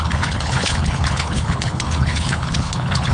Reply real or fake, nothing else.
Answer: fake